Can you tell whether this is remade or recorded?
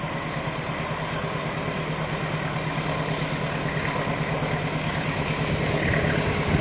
recorded